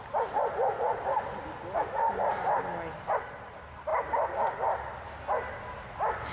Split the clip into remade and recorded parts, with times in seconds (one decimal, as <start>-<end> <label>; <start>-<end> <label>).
0.0-6.3 recorded